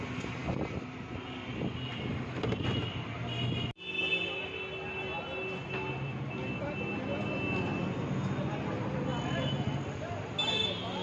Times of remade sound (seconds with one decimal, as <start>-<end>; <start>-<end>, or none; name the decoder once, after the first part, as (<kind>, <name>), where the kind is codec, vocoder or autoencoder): none